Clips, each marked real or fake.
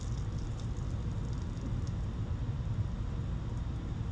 real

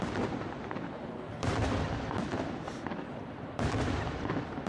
fake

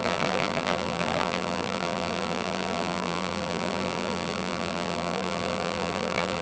fake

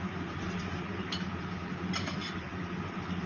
fake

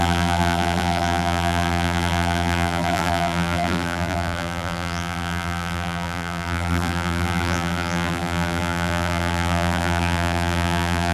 fake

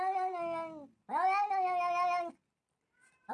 real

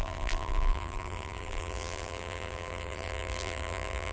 fake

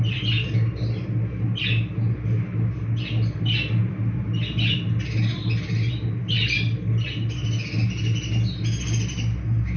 real